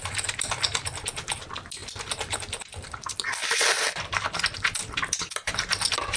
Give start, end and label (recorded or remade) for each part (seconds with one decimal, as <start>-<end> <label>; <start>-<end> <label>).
0.0-1.8 recorded; 1.8-5.3 remade; 5.3-6.2 recorded